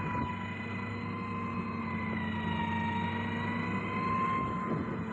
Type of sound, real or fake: real